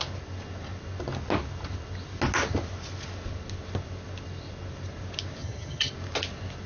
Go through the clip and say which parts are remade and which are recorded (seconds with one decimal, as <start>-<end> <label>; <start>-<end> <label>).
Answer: 0.0-5.4 recorded; 5.4-5.9 remade; 5.9-6.7 recorded